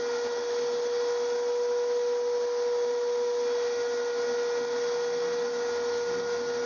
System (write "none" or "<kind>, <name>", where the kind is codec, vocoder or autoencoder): none